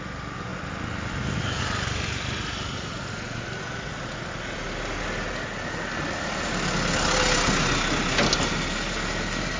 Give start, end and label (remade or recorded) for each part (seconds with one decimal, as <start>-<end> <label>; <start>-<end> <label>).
0.0-9.6 recorded